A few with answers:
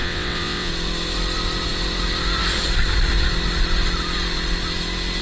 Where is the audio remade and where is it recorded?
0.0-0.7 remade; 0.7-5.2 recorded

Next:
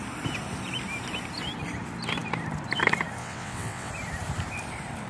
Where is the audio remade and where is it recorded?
0.0-3.2 recorded; 3.2-3.9 remade; 3.9-5.1 recorded

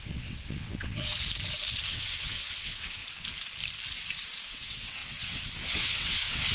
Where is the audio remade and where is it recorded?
0.0-1.1 remade; 1.1-1.9 recorded; 1.9-3.0 remade; 3.0-4.4 recorded; 4.4-6.5 remade

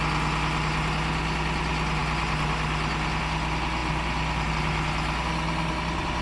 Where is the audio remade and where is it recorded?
0.0-6.2 recorded

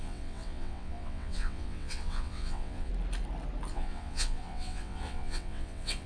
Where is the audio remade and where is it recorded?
0.0-2.9 remade; 2.9-3.7 recorded; 3.7-6.1 remade

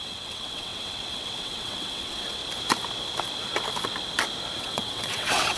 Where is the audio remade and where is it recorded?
0.0-2.4 remade; 2.4-4.6 recorded; 4.6-5.6 remade

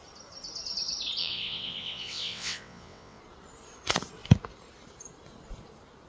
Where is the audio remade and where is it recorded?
0.0-1.2 recorded; 1.2-3.2 remade; 3.2-6.1 recorded

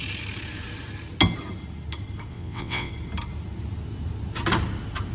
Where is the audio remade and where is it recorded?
0.0-2.3 recorded; 2.3-2.9 remade; 2.9-5.1 recorded